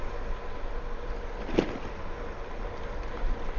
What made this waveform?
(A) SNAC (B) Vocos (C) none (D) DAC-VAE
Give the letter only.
C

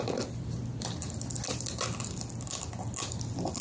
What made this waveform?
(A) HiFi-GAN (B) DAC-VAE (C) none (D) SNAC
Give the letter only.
C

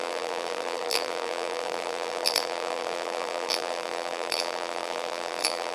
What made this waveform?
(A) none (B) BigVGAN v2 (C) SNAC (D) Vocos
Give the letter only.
B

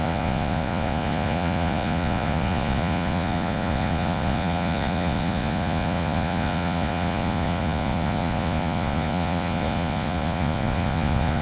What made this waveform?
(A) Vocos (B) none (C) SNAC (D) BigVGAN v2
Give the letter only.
A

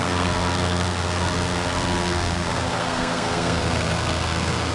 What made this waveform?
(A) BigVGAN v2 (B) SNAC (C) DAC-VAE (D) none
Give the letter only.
B